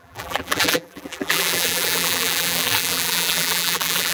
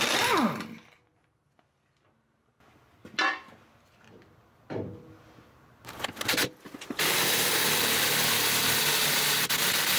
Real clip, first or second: second